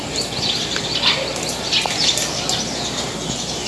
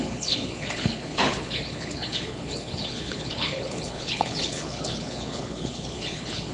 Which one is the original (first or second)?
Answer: first